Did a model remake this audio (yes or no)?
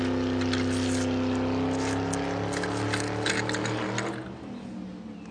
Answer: no